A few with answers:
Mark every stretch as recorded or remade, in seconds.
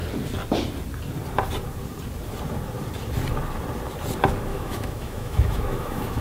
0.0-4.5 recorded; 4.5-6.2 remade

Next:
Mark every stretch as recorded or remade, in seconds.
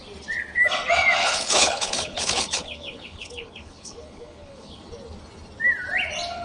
0.0-1.2 recorded; 1.2-4.8 remade; 4.8-6.4 recorded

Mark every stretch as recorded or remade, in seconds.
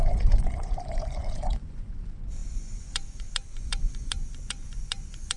0.0-5.4 remade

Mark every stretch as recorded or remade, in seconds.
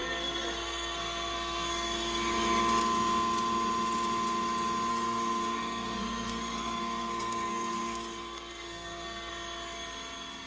0.0-1.7 remade; 1.7-4.9 recorded; 4.9-9.3 remade; 9.3-10.5 recorded